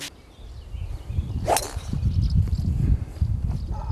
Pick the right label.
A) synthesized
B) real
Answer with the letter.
B